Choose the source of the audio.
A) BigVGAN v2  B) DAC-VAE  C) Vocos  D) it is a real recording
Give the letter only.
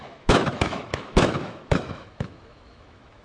B